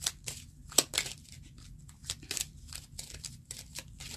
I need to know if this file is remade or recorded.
recorded